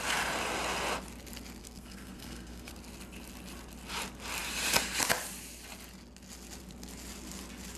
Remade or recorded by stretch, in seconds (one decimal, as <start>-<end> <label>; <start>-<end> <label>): 0.0-1.6 recorded; 1.6-2.7 remade; 2.7-7.8 recorded